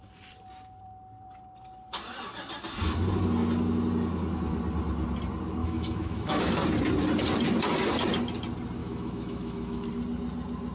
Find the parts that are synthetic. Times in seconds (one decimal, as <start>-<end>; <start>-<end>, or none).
5.6-6.4; 8.8-9.9